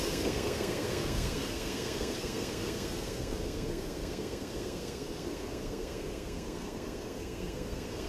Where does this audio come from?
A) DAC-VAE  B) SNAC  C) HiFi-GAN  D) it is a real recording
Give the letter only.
B